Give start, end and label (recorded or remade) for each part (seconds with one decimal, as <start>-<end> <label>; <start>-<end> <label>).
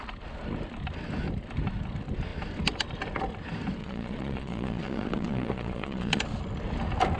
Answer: 0.0-3.8 recorded; 3.8-6.2 remade; 6.2-7.2 recorded